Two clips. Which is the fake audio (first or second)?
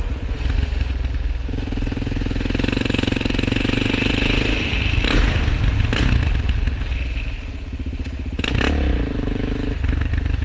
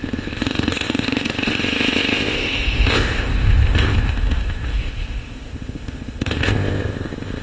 second